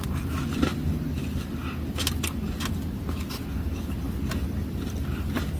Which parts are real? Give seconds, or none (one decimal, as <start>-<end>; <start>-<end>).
0.7-3.4